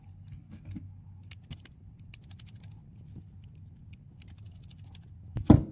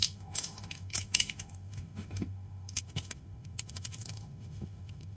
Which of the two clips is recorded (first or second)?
first